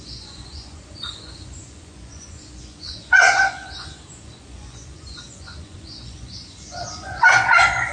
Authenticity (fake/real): fake